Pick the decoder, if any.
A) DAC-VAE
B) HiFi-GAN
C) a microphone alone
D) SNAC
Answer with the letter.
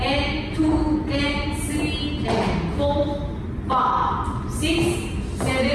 C